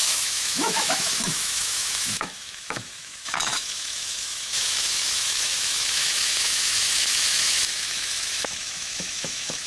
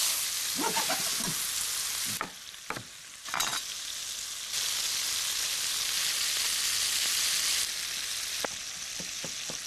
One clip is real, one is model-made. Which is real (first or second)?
second